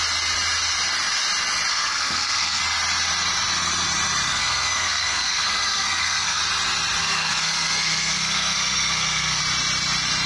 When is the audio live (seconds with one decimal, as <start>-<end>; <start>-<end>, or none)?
0.0-1.7; 2.6-4.3; 6.4-7.0; 9.4-10.3